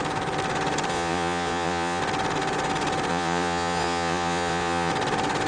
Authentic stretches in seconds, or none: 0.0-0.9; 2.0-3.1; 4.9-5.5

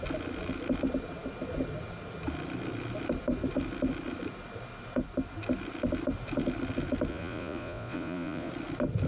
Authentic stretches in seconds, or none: 0.0-7.1; 8.5-9.1